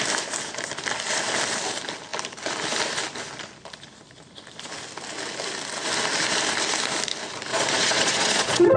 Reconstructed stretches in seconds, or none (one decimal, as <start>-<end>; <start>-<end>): 7.5-8.8